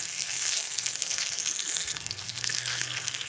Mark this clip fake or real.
fake